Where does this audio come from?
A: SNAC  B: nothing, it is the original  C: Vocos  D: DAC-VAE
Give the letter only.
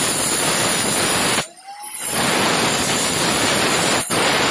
B